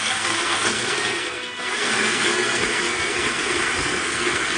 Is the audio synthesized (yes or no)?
yes